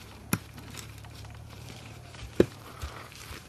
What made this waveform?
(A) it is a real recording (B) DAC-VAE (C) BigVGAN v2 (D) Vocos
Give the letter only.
C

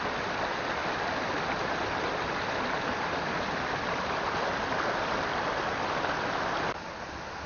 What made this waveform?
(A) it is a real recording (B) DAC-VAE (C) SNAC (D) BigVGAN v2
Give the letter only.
A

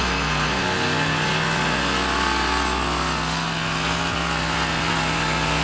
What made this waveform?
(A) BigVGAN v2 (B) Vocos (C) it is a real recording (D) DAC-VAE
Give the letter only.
C